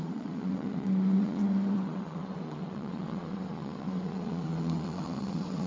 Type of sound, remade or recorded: remade